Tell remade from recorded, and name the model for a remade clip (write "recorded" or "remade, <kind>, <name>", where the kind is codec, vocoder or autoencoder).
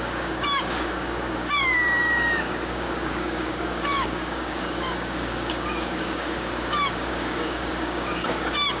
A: remade, codec, DAC